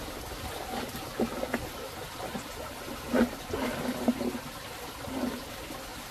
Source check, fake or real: real